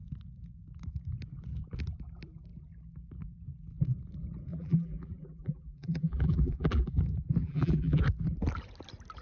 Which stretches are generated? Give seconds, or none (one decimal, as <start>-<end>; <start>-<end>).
4.5-7.0; 7.4-8.0